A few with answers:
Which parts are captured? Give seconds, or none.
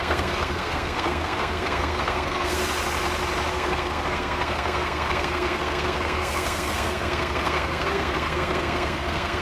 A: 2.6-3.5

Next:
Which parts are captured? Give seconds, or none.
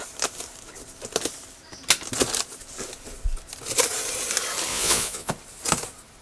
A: 0.0-4.7; 5.3-6.2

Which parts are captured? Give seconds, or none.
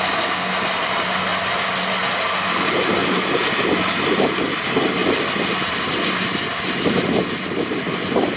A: 0.0-8.4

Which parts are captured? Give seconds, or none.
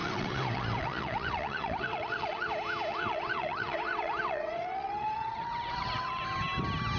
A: 2.5-2.9; 6.2-7.0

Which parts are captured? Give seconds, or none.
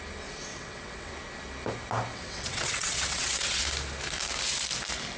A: 0.0-0.5; 1.1-2.1; 3.6-5.2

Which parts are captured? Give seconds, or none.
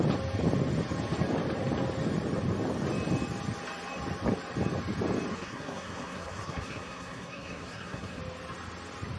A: 0.0-5.3; 8.2-9.2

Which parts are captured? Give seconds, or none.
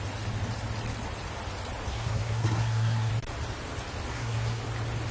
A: 0.0-1.9; 3.1-4.1; 4.6-5.1